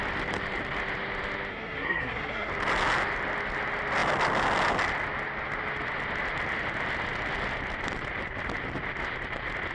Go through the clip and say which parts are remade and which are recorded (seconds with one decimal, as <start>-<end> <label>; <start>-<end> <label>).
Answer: 0.0-1.5 recorded; 1.5-2.5 remade; 2.5-9.7 recorded